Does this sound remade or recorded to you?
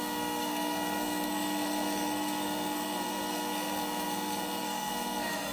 remade